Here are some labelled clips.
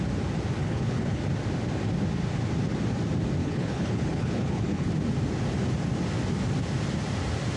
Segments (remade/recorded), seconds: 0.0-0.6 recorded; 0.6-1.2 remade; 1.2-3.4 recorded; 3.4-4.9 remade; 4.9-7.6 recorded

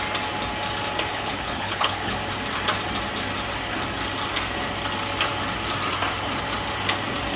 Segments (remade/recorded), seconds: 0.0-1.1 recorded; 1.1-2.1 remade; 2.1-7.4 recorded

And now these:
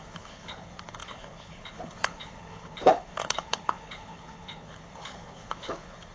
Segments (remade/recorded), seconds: 0.0-6.1 remade

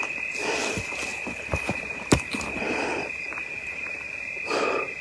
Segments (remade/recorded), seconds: 0.0-5.0 recorded

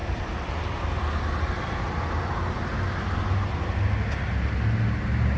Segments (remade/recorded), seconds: 0.0-5.4 recorded

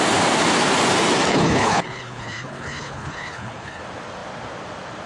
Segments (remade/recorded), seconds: 0.0-1.3 recorded; 1.3-3.8 remade; 3.8-5.1 recorded